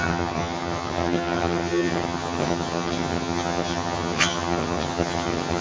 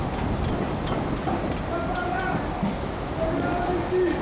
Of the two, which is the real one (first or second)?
second